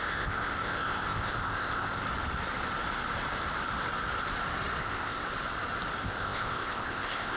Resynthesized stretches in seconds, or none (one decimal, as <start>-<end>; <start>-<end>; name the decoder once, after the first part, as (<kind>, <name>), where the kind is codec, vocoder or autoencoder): 0.0-2.0 (codec, ZipCodec); 4.8-5.2; 6.0-7.4

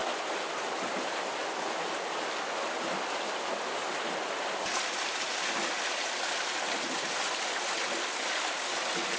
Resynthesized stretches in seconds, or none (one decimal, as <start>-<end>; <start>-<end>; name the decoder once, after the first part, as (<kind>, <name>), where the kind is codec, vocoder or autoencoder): none